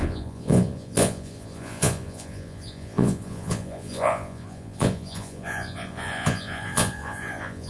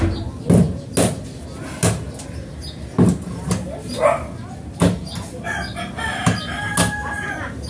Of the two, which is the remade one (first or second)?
first